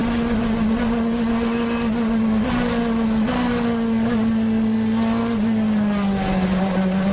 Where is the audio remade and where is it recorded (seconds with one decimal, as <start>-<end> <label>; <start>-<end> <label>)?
0.0-7.1 recorded